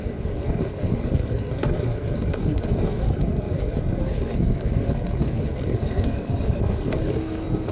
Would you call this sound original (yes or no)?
no